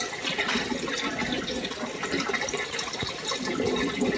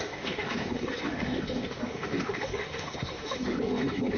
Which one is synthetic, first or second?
second